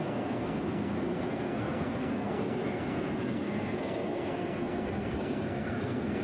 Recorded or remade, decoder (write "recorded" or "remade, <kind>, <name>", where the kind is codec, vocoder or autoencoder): remade, codec, SNAC